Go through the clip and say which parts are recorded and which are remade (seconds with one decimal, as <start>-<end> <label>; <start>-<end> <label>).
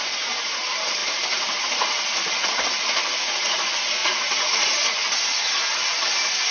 0.0-3.1 recorded; 3.1-3.6 remade; 3.6-4.0 recorded; 4.0-4.7 remade; 4.7-6.5 recorded